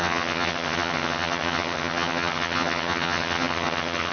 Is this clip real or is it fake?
fake